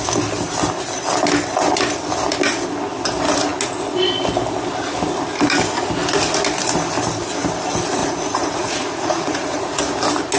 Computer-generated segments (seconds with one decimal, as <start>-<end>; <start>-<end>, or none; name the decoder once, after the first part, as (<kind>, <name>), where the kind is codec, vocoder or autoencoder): 8.0-9.8 (vocoder, Vocos)

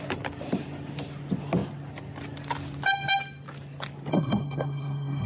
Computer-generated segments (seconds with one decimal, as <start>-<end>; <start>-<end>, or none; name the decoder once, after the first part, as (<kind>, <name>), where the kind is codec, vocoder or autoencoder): 4.1-5.3 (codec, SNAC)